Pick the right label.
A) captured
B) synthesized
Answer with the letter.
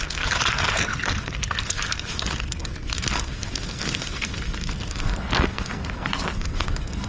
B